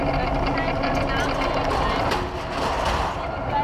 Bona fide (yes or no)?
yes